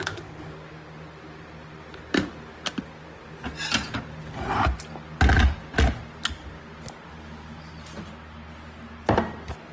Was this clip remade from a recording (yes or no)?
no